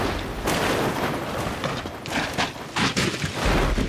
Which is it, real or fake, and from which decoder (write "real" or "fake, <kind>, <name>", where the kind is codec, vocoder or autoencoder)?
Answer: real